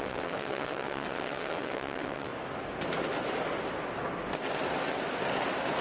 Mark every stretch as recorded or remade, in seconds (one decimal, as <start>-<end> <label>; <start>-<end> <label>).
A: 0.0-2.3 remade; 2.3-5.8 recorded